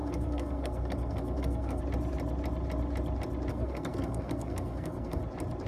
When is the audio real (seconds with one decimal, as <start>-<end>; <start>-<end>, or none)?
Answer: 1.8-3.5; 5.2-5.7

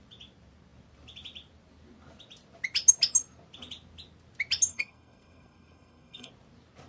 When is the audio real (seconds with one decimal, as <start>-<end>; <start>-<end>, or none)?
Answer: 0.0-4.7; 6.3-6.9

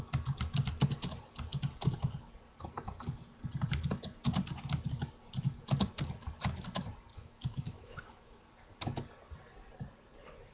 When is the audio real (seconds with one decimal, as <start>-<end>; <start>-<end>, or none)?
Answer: 0.0-7.1; 8.4-10.5

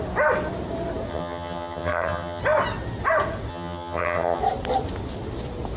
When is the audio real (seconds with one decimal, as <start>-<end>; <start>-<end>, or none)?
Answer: 0.0-1.1; 2.4-3.5; 4.4-5.8

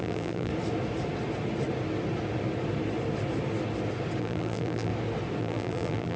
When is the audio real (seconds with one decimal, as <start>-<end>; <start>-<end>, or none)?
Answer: 0.5-4.2; 4.9-5.4

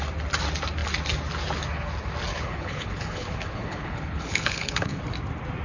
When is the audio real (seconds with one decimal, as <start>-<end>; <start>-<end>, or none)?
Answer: 0.0-2.3; 5.0-5.6